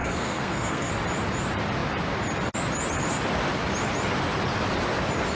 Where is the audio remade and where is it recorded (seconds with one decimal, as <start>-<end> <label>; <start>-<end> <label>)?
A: 0.0-0.9 remade; 0.9-5.3 recorded